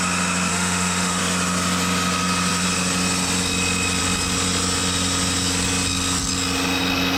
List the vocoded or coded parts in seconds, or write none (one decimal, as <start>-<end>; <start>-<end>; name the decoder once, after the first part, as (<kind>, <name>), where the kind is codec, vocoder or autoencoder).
0.5-1.2 (autoencoder, DAC-VAE)